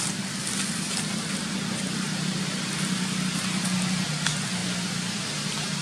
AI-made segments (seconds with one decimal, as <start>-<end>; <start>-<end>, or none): none

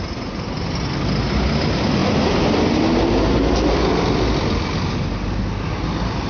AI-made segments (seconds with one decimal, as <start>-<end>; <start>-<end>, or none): none

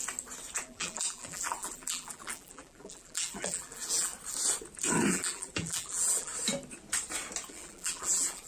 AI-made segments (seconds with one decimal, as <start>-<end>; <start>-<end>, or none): 0.6-4.1; 5.1-6.3; 7.5-8.5

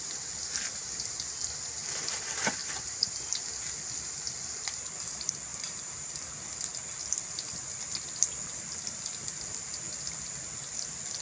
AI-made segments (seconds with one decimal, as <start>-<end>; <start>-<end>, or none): 2.6-3.4; 5.5-6.3

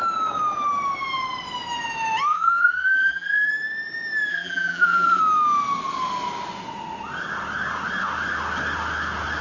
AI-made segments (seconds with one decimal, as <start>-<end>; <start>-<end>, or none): 2.3-3.5; 4.3-5.2

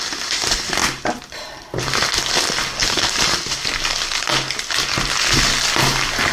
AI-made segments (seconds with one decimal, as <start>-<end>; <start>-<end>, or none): 0.8-1.8; 2.8-3.6

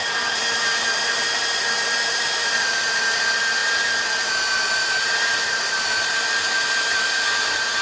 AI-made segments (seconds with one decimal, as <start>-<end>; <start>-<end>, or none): 0.0-7.8